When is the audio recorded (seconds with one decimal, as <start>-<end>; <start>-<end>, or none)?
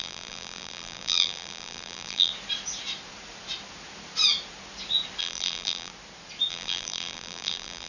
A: 2.3-5.2; 5.9-6.5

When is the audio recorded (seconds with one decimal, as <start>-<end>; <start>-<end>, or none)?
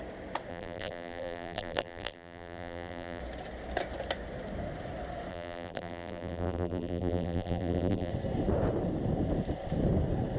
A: 0.0-0.5; 3.2-5.3; 8.1-10.4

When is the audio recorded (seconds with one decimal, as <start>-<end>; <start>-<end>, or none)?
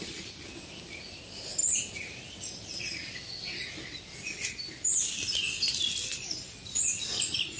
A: 0.0-1.6; 2.8-7.6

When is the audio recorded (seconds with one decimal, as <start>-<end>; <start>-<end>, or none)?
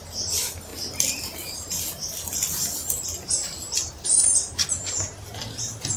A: 0.0-6.0